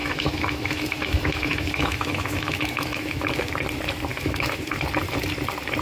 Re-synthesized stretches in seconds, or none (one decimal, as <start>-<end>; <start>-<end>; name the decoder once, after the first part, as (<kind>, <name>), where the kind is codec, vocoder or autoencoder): 0.0-3.5 (autoencoder, DAC-VAE); 4.1-4.7

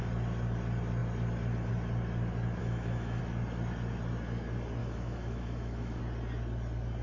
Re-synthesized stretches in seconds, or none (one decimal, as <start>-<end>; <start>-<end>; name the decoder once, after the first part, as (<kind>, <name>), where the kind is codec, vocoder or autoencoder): 2.6-3.2 (autoencoder, DAC-VAE); 4.8-6.0

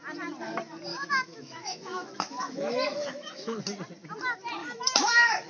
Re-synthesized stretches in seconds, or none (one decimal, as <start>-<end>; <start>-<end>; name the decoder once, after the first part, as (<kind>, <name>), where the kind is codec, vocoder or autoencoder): 0.9-3.6 (autoencoder, DAC-VAE); 4.6-5.5

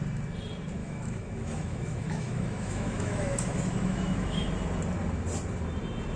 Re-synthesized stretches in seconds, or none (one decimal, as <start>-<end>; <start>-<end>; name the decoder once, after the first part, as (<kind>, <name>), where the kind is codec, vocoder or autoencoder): 0.8-4.5 (autoencoder, DAC-VAE)

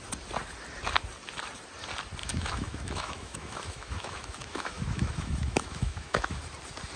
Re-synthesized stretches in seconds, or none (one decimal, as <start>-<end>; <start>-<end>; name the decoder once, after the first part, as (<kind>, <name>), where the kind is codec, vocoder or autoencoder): 2.2-6.4 (autoencoder, DAC-VAE)